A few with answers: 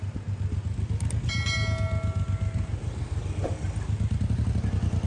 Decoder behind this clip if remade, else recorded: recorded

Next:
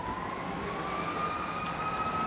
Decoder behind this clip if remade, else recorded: recorded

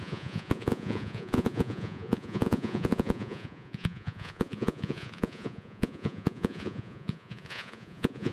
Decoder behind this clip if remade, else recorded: remade, vocoder, Vocos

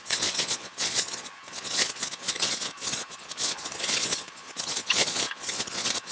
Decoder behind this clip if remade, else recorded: remade, vocoder, Vocos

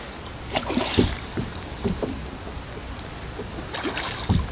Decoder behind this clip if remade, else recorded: recorded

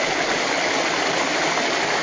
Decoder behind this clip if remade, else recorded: recorded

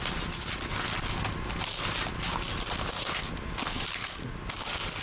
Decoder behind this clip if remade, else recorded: recorded